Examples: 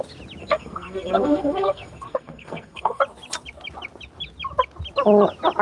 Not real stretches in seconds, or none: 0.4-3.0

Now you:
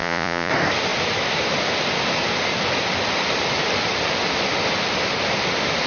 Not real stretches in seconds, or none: 0.0-0.5

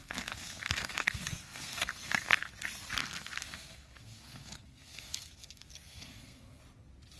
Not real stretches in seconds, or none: 0.0-2.5; 3.0-6.6

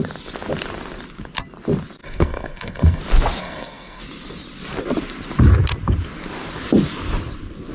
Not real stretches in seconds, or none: 2.0-3.0; 3.4-4.0

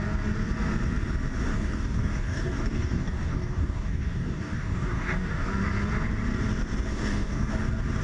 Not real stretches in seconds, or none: 1.5-5.5; 6.9-7.5

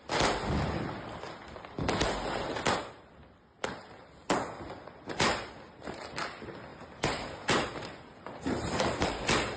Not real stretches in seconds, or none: 4.2-5.1; 6.7-9.2